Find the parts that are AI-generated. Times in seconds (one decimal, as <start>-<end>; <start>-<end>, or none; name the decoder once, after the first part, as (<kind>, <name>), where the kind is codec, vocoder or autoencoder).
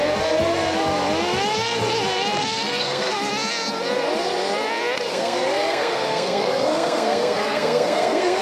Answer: 2.4-3.3 (codec, SNAC); 5.1-8.4